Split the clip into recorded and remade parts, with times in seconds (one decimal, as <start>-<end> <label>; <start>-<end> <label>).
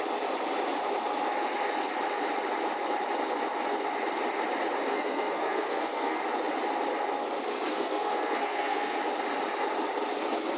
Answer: 0.0-4.9 recorded; 4.9-6.2 remade; 6.2-7.7 recorded; 7.7-9.0 remade; 9.0-10.6 recorded